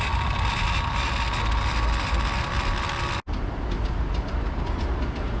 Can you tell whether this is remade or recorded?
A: recorded